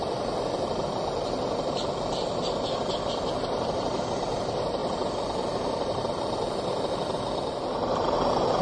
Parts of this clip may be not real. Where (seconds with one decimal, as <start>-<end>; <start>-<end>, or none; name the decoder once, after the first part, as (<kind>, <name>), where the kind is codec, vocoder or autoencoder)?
none